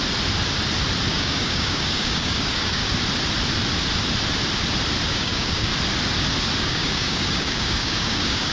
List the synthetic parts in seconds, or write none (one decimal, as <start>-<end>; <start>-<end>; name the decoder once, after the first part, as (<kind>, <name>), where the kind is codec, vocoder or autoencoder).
1.1-2.8 (codec, DAC); 5.1-5.7; 6.6-8.5